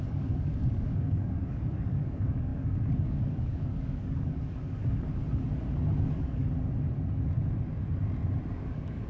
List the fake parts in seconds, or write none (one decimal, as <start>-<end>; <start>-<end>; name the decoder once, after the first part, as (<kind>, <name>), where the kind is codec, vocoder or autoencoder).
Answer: 0.0-5.2 (codec, DAC); 6.0-6.4; 8.5-9.1